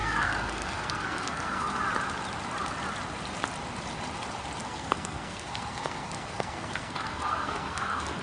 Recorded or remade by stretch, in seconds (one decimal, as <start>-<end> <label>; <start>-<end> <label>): 0.0-1.8 remade; 1.8-4.6 recorded; 4.6-8.2 remade